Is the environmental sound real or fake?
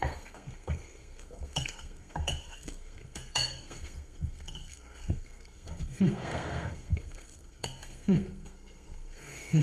fake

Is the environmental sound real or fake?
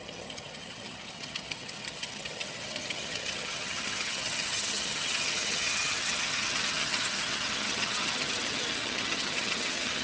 fake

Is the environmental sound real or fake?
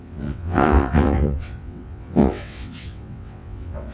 fake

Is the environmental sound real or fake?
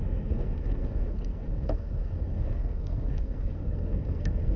fake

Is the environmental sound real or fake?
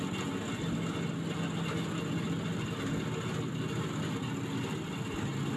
real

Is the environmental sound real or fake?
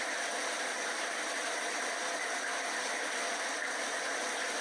real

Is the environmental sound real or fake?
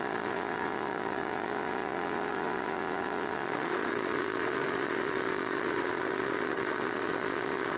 fake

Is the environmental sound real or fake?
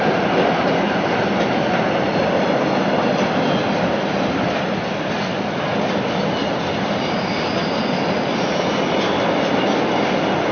real